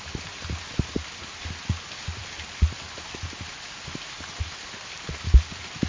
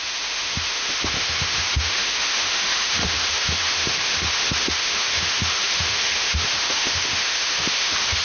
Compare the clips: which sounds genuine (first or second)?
first